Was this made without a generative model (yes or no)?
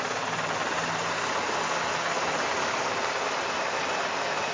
yes